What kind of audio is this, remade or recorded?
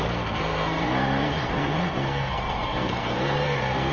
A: remade